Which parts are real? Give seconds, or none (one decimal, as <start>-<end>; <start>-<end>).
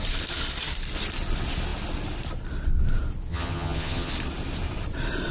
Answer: 0.0-3.3; 4.1-5.3